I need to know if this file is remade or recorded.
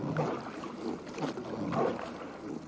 recorded